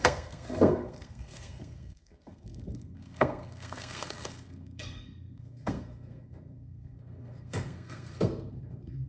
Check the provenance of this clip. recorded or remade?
remade